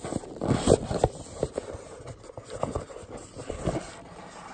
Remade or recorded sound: recorded